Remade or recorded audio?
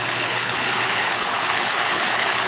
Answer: remade